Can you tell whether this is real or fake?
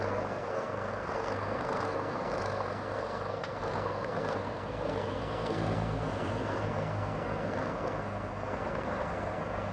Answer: fake